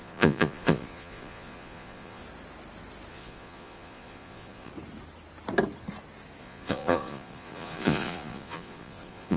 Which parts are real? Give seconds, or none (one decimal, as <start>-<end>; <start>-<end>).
2.2-3.1; 4.7-6.4